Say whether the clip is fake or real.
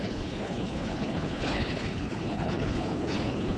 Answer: fake